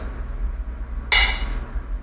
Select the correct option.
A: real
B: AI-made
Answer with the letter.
A